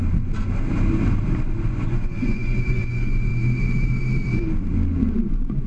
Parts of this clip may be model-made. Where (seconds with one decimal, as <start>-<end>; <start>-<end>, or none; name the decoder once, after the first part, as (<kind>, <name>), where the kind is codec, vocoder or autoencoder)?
1.7-3.3 (vocoder, Vocos); 5.3-5.7